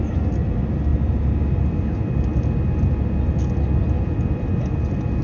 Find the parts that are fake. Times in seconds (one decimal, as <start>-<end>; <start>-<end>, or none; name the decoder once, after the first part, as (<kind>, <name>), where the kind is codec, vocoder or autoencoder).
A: none